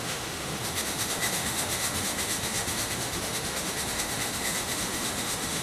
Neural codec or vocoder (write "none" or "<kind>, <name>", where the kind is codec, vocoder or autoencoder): autoencoder, DAC-VAE